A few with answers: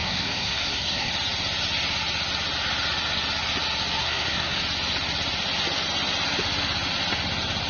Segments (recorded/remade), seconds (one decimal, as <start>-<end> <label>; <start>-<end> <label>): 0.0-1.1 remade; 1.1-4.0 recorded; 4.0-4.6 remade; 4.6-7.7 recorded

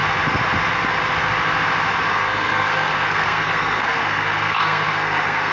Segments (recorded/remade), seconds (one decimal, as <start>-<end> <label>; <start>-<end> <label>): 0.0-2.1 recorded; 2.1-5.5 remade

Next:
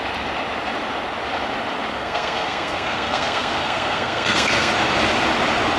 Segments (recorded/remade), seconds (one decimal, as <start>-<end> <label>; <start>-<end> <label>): 0.0-1.9 recorded; 1.9-4.7 remade; 4.7-5.8 recorded

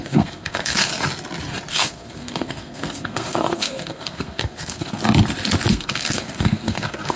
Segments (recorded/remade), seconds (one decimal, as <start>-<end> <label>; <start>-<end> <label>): 0.0-0.9 remade; 0.9-1.7 recorded; 1.7-5.0 remade; 5.0-5.7 recorded; 5.7-7.2 remade

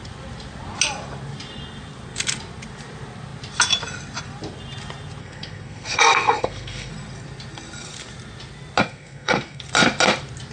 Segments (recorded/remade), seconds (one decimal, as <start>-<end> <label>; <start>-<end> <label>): 0.0-5.2 recorded; 5.2-6.9 remade; 6.9-8.8 recorded; 8.8-9.6 remade; 9.6-10.5 recorded

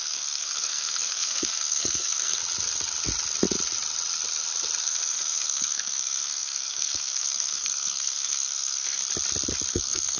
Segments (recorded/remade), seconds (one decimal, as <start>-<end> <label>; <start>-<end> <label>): 0.0-2.4 remade; 2.4-4.8 recorded; 4.8-9.0 remade; 9.0-9.7 recorded; 9.7-10.2 remade